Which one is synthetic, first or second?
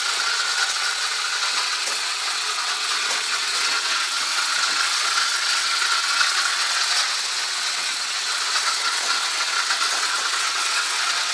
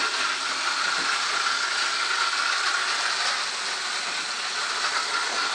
first